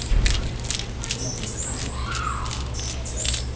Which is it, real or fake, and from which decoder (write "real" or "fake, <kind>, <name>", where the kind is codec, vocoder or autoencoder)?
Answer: real